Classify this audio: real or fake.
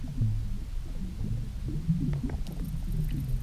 real